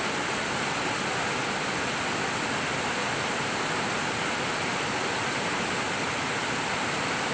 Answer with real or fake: real